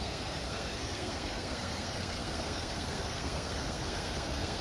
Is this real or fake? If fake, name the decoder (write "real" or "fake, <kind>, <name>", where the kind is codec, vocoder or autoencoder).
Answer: fake, codec, SNAC